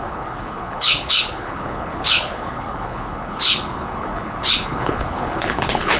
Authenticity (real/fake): fake